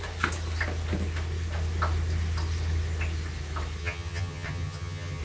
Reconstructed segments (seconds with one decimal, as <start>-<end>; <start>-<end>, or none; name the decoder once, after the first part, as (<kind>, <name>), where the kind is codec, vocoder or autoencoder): 3.8-5.2 (vocoder, HiFi-GAN)